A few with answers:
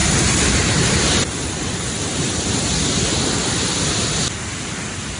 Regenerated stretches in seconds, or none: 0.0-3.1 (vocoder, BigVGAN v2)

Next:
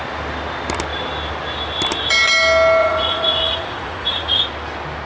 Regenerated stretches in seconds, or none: 2.8-4.4 (vocoder, Vocos)

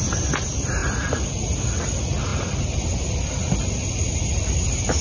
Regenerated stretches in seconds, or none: none

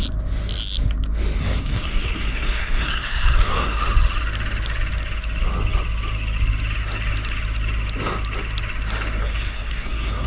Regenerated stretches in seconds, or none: 1.4-3.8 (codec, SNAC); 9.2-10.3

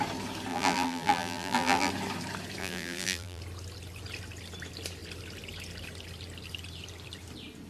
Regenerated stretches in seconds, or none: 0.5-1.9 (vocoder, BigVGAN v2); 2.6-3.4